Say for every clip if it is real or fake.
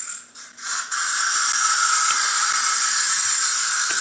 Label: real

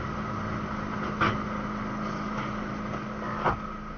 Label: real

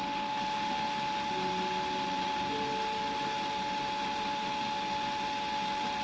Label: real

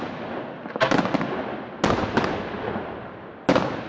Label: real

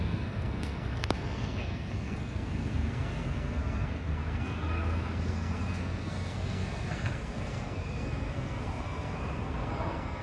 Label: fake